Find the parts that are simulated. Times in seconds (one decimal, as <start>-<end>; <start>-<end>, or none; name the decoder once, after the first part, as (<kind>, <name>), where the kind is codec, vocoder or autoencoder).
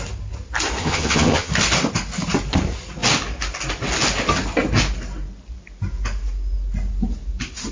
0.8-1.5 (vocoder, HiFi-GAN)